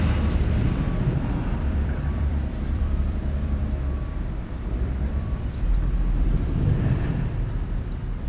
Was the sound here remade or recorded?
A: remade